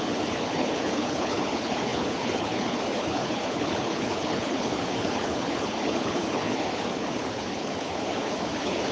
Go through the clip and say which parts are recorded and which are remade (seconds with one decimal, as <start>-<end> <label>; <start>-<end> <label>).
0.0-8.9 remade

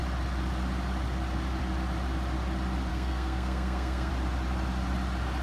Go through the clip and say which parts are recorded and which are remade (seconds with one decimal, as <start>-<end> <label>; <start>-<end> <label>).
0.0-2.9 recorded; 2.9-4.1 remade; 4.1-5.4 recorded

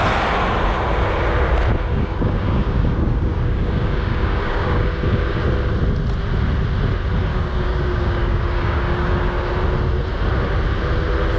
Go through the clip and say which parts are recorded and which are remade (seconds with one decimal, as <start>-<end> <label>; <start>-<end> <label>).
0.0-1.9 recorded; 1.9-5.4 remade; 5.4-7.3 recorded; 7.3-9.5 remade; 9.5-11.4 recorded

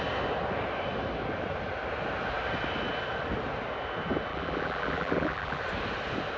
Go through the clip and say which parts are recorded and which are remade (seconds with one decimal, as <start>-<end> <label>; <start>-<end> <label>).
0.0-4.3 recorded; 4.3-5.6 remade; 5.6-6.4 recorded